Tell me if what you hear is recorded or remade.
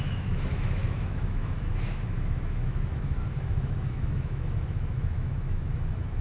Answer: remade